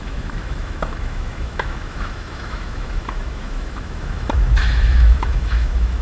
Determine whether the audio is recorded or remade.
remade